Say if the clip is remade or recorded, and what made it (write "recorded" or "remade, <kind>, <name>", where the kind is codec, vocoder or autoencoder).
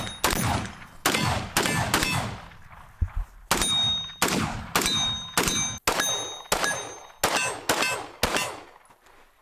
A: recorded